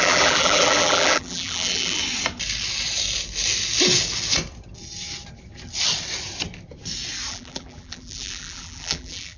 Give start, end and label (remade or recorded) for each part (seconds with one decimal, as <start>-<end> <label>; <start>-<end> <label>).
0.0-2.0 remade; 2.0-7.3 recorded; 7.3-9.4 remade